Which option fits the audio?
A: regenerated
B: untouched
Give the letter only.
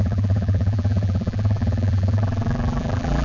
A